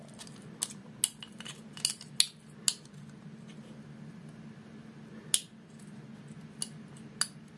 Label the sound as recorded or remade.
recorded